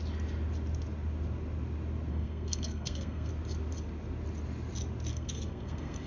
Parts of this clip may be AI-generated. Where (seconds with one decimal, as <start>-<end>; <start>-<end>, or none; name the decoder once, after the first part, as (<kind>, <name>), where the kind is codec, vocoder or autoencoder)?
2.1-3.3 (codec, SNAC); 5.1-6.1